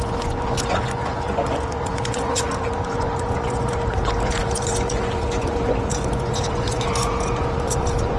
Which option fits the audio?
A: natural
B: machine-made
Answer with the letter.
B